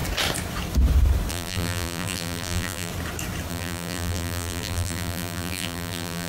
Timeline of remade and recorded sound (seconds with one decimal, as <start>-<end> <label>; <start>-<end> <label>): 0.0-1.3 recorded; 1.3-2.9 remade; 2.9-3.5 recorded; 3.5-6.3 remade